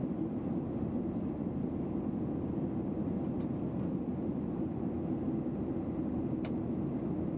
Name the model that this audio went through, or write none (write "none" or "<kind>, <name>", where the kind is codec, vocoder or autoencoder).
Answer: none